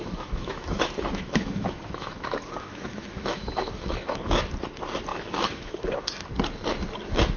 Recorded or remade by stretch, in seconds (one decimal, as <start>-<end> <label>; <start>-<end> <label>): 0.0-4.4 remade; 4.4-5.1 recorded; 5.1-6.1 remade; 6.1-7.4 recorded